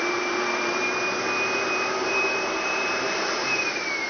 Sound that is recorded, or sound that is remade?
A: remade